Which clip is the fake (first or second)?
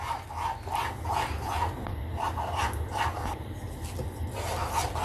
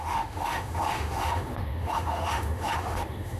second